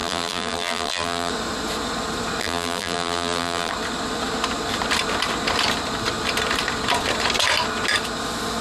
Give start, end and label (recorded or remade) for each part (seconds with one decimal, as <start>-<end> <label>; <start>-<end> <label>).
0.0-1.3 remade; 1.3-2.4 recorded; 2.4-3.7 remade; 3.7-8.6 recorded